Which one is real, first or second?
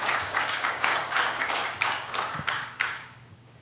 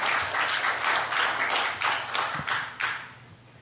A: second